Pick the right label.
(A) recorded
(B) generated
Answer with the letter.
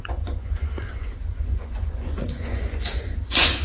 B